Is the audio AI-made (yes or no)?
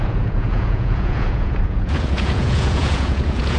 yes